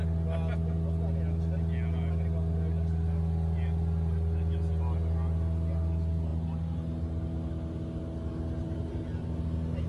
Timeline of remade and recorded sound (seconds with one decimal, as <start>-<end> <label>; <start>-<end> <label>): 0.0-9.9 recorded